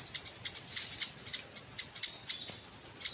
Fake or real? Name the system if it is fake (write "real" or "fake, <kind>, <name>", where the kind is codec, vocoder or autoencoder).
real